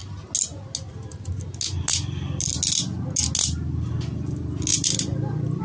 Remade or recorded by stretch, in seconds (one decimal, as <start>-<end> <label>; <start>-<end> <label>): 0.0-4.7 recorded; 4.7-5.6 remade